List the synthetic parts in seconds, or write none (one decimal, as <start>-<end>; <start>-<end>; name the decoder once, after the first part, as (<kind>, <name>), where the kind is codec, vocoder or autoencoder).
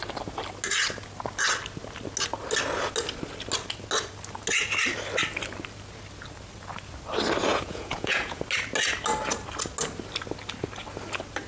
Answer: 7.5-8.4 (vocoder, Vocos)